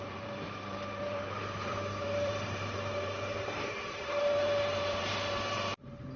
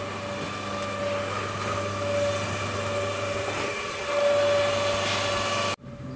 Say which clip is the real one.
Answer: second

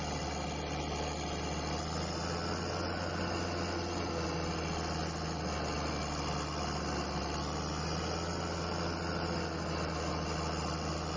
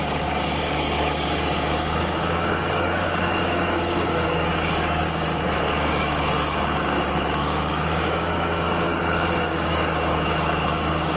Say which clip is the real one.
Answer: first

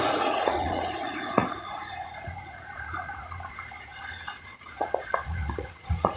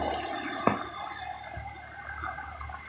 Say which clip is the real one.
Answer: second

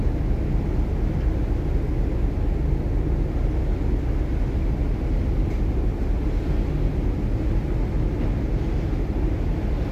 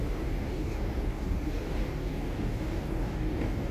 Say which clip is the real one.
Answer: first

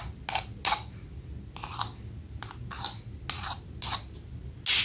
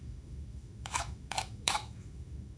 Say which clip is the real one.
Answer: first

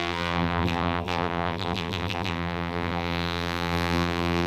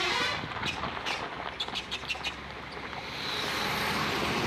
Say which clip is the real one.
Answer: second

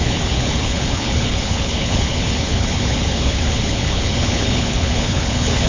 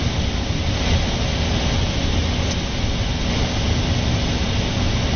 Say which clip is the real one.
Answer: second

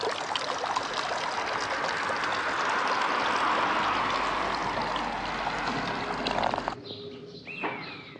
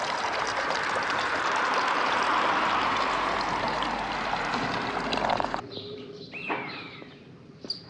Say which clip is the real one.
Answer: first